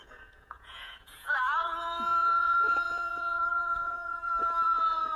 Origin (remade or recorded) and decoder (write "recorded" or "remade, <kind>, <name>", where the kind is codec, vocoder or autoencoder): remade, vocoder, Vocos